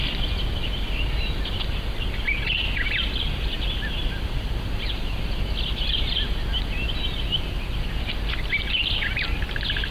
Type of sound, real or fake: real